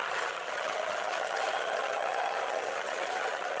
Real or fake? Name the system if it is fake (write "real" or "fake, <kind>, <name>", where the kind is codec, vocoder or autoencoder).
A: fake, vocoder, HiFi-GAN